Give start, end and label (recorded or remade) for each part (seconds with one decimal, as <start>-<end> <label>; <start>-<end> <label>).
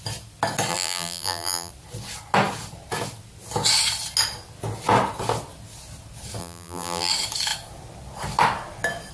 0.0-0.7 recorded; 0.7-1.7 remade; 1.7-6.4 recorded; 6.4-7.1 remade; 7.1-9.1 recorded